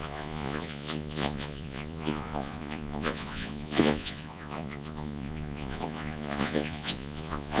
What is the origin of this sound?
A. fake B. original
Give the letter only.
A